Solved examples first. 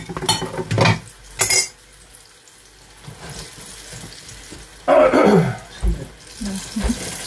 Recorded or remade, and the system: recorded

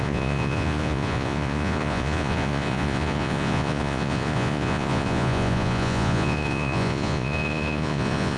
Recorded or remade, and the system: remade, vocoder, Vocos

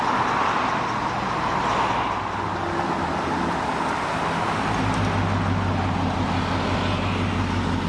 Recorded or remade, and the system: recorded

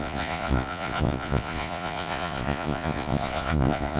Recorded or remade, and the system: remade, vocoder, Vocos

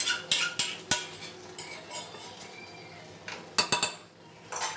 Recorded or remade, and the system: recorded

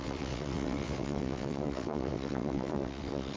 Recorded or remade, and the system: remade, vocoder, WaveNeXt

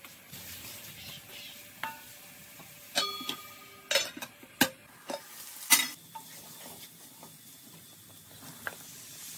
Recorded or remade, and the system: recorded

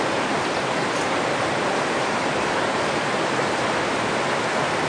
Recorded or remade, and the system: remade, vocoder, BigVGAN v2